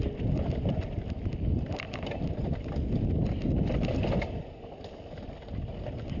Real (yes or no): yes